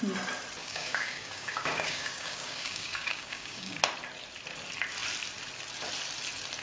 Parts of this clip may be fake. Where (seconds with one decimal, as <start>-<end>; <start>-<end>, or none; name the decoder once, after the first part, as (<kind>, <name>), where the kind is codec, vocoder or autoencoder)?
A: 0.6-3.8 (codec, DAC)